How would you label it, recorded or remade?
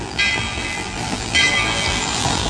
remade